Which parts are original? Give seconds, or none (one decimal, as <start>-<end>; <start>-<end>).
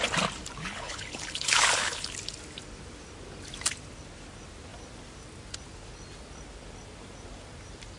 0.0-0.6; 2.1-8.0